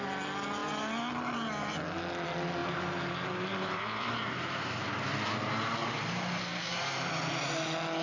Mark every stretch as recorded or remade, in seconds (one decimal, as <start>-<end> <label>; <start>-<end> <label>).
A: 0.0-2.6 recorded; 2.6-7.1 remade; 7.1-8.0 recorded